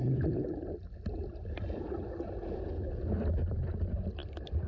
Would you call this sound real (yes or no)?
yes